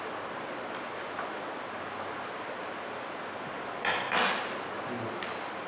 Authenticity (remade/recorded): recorded